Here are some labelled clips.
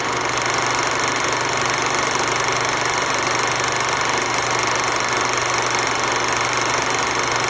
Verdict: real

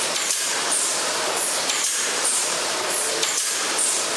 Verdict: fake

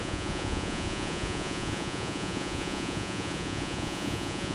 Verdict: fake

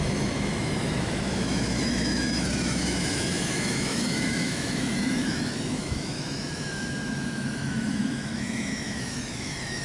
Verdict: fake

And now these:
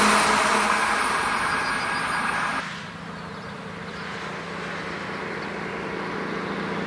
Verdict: real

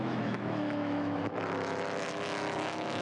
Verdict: fake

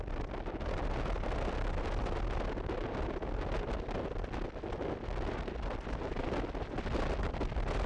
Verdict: real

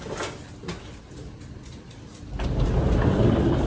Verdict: real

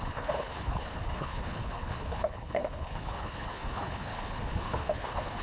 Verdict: fake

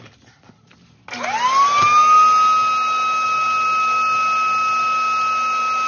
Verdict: real